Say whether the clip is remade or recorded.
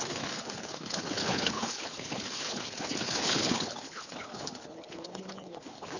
remade